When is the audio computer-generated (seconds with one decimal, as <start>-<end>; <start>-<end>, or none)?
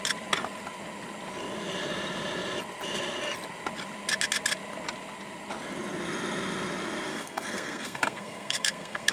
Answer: 7.1-9.1